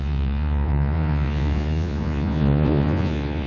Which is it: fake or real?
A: fake